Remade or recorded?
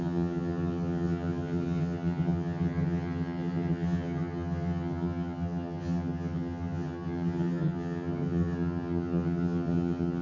remade